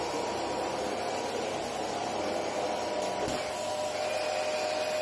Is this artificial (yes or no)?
no